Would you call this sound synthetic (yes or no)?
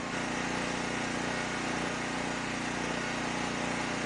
no